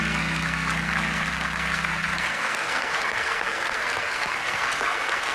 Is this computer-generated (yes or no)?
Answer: yes